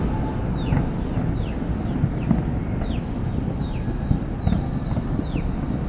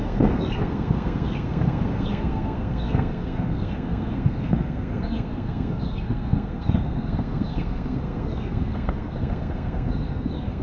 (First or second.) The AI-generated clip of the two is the second